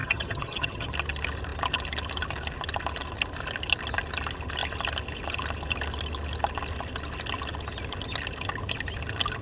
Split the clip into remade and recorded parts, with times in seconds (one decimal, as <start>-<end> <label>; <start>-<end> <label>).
0.0-0.9 remade; 0.9-9.4 recorded